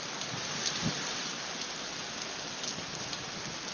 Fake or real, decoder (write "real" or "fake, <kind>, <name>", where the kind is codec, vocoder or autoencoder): real